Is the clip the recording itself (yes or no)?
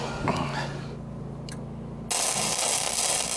yes